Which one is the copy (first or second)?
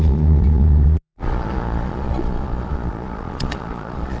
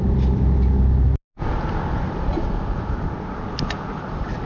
first